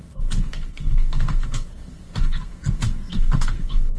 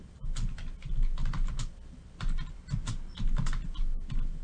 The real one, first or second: second